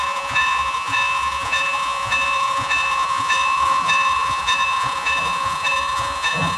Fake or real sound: fake